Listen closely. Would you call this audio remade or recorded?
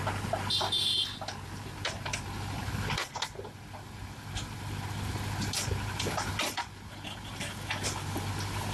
recorded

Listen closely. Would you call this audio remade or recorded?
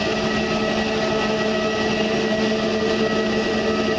recorded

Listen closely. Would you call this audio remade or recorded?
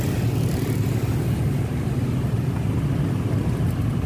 recorded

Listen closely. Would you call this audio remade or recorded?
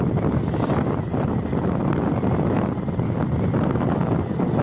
recorded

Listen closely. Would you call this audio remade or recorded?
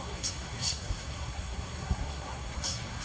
remade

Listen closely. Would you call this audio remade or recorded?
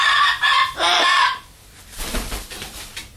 remade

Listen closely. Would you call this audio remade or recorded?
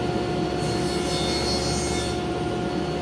recorded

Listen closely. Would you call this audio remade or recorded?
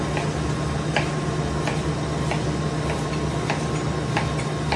recorded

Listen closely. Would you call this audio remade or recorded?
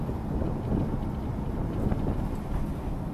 recorded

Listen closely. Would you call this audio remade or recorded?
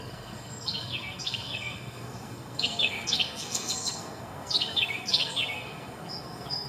remade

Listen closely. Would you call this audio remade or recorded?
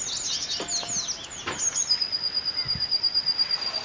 recorded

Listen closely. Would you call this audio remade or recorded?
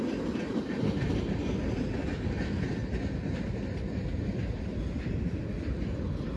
recorded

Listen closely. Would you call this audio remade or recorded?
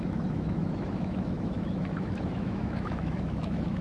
remade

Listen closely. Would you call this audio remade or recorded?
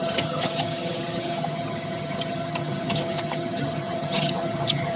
remade